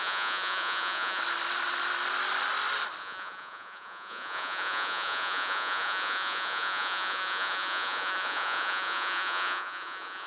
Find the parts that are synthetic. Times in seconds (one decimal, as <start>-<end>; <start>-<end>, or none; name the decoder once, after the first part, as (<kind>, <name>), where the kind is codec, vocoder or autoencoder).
0.0-1.2 (vocoder, Vocos); 3.0-10.3